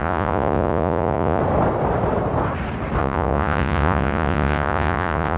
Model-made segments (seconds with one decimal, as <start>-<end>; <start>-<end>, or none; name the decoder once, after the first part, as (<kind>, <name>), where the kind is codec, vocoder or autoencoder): 0.0-1.4 (vocoder, Vocos); 3.0-5.4